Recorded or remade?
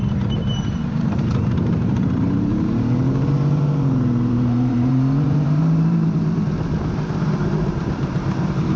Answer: remade